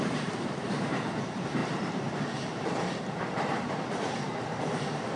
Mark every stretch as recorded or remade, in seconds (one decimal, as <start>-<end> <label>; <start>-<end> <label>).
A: 0.0-5.2 remade